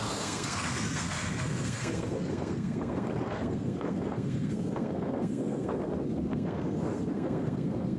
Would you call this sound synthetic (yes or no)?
yes